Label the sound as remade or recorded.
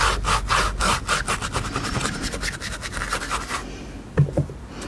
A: recorded